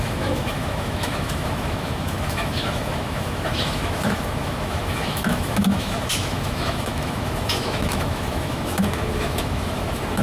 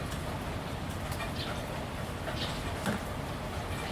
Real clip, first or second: second